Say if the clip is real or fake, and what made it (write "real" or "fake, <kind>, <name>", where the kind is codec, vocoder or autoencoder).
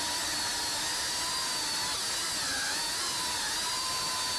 real